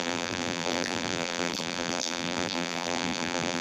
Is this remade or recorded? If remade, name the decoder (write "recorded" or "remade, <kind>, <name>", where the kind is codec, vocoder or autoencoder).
remade, vocoder, BigVGAN v2